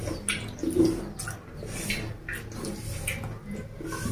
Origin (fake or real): real